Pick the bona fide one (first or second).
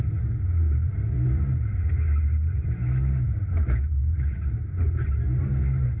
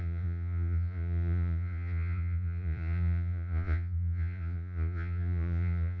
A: first